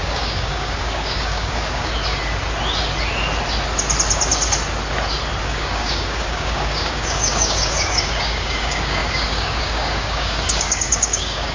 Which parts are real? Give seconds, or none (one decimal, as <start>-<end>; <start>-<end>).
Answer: 1.9-5.4